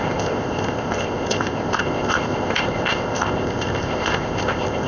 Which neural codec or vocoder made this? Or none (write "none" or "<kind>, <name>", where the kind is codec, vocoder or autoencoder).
codec, ZipCodec